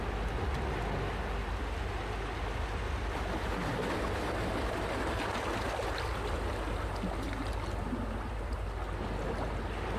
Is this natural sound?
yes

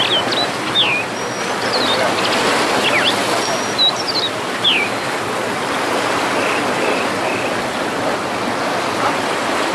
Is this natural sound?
yes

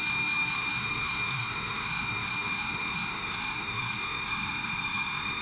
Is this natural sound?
no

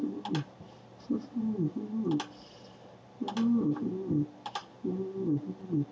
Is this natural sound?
yes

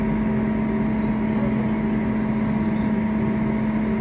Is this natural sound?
yes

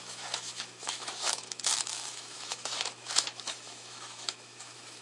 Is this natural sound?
no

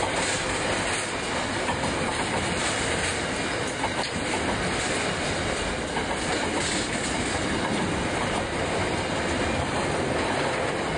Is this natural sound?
yes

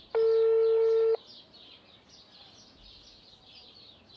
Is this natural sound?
yes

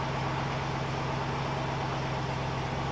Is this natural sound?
yes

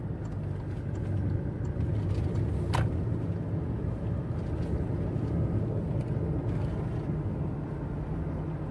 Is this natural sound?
yes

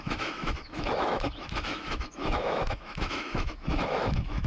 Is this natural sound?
no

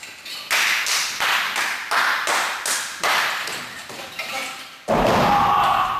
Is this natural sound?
yes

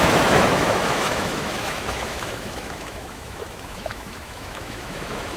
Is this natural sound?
no